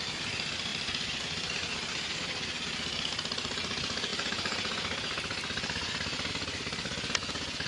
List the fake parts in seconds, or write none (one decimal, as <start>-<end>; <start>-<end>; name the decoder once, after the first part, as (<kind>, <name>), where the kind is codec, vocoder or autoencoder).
0.7-1.2 (vocoder, BigVGAN v2)